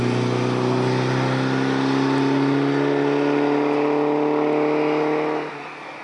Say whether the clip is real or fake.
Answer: real